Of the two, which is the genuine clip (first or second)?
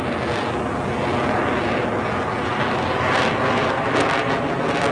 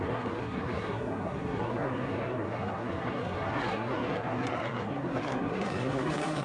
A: first